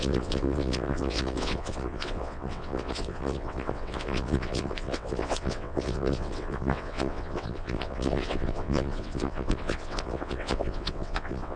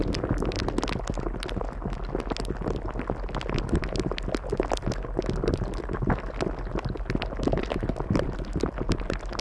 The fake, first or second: first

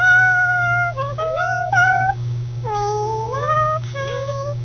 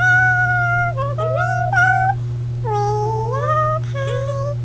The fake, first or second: first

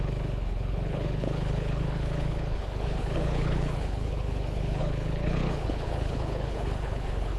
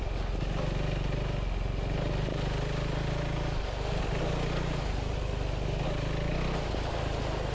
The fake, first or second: first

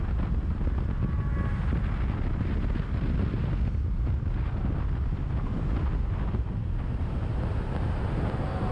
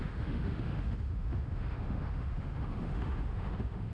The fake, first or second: second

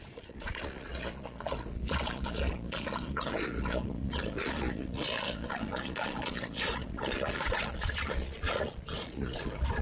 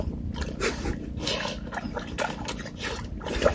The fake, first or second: first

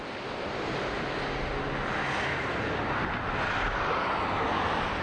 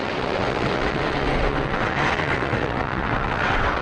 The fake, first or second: second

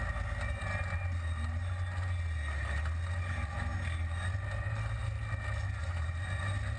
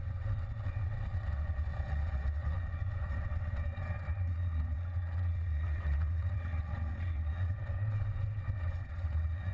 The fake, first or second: second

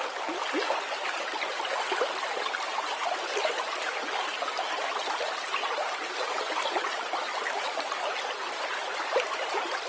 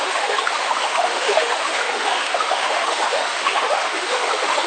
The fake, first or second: second